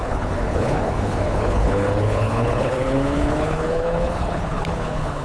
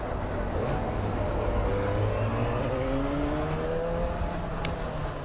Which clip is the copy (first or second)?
first